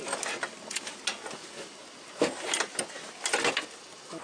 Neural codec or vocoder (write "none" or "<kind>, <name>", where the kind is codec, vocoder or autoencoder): none